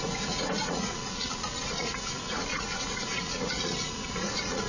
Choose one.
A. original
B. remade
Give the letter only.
B